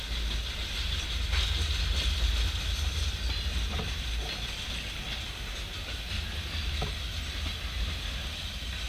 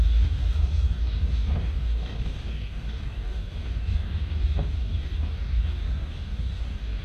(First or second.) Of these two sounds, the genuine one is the first